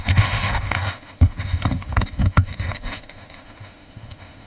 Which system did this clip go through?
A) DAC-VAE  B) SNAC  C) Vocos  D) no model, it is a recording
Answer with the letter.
A